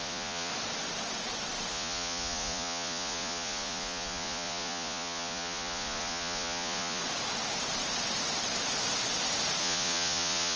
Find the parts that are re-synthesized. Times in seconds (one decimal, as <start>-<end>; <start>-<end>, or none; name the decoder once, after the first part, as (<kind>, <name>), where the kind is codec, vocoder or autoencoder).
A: 0.0-0.5 (vocoder, Vocos); 1.7-7.0; 9.6-10.6